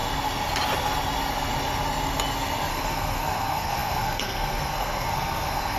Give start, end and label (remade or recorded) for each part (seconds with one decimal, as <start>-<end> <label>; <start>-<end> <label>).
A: 0.0-2.7 recorded; 2.7-5.8 remade